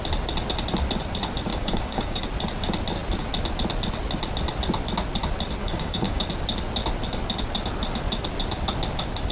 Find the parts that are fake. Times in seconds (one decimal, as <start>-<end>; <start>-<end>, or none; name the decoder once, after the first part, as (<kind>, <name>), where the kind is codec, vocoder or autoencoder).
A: 1.5-2.2 (codec, DAC); 5.6-6.2